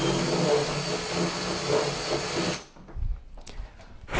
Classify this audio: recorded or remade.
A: recorded